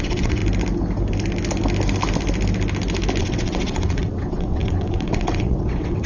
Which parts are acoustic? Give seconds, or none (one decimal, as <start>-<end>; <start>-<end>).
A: 0.4-3.2